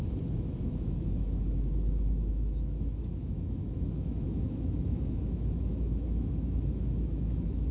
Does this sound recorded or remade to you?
remade